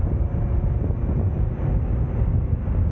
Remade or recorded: recorded